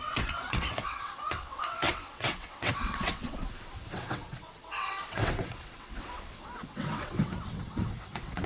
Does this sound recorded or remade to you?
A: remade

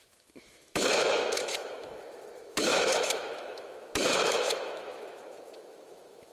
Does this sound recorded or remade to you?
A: remade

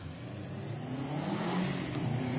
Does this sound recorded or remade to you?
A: recorded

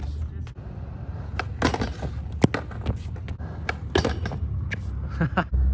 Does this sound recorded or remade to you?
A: recorded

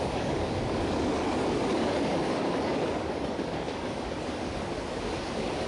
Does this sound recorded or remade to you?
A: remade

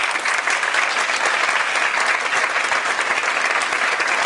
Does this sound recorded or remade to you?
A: recorded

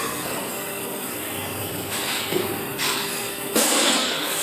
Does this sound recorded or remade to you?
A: remade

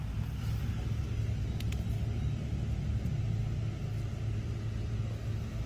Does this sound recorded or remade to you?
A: recorded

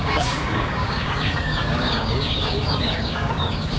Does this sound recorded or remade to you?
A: remade